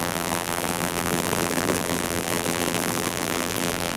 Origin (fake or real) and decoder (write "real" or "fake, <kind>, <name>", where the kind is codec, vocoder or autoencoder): fake, vocoder, BigVGAN v2